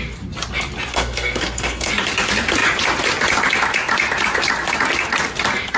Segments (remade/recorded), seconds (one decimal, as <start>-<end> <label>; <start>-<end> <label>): 0.0-0.9 recorded; 0.9-1.9 remade; 1.9-5.8 recorded